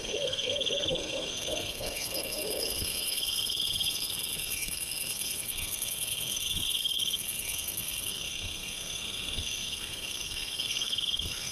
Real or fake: fake